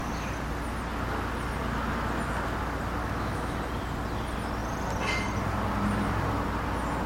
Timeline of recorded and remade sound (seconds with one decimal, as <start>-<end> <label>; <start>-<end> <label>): 0.0-3.0 recorded; 3.0-3.6 remade; 3.6-7.1 recorded

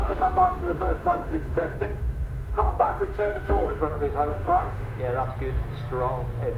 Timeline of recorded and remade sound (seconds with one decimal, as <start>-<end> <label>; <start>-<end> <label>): 0.0-3.8 remade; 3.8-4.3 recorded; 4.3-5.0 remade; 5.0-6.6 recorded

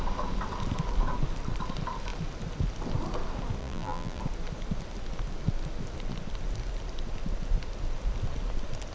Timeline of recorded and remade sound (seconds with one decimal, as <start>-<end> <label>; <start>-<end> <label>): 0.0-3.6 recorded; 3.6-4.2 remade; 4.2-8.9 recorded

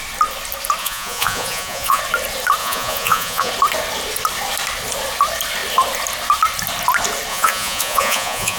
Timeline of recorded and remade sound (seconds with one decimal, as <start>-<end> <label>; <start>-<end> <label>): 0.0-0.8 recorded; 0.8-2.0 remade; 2.0-2.6 recorded; 2.6-3.5 remade; 3.5-7.3 recorded; 7.3-8.6 remade

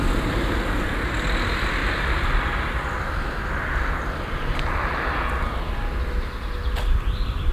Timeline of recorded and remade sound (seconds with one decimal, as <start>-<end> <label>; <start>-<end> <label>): 0.0-1.8 recorded; 1.8-5.2 remade; 5.2-6.6 recorded; 6.6-7.5 remade

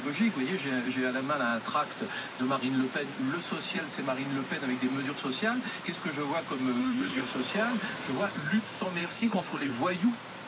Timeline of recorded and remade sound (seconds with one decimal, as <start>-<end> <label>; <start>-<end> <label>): 0.0-6.8 recorded; 6.8-7.3 remade; 7.3-9.0 recorded; 9.0-9.7 remade; 9.7-10.5 recorded

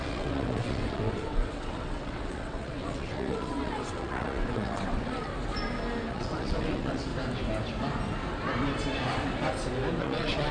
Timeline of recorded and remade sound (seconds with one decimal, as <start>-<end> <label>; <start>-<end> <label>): 0.0-5.3 remade; 5.3-6.1 recorded; 6.1-7.1 remade; 7.1-10.0 recorded; 10.0-10.5 remade

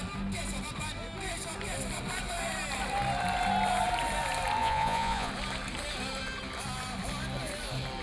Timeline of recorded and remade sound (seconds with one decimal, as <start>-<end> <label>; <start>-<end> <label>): 0.0-4.6 recorded; 4.6-5.3 remade; 5.3-8.0 recorded